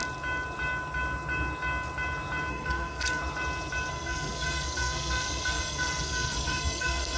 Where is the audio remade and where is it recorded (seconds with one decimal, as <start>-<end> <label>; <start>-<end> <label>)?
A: 0.0-2.5 recorded; 2.5-3.2 remade; 3.2-3.9 recorded; 3.9-7.2 remade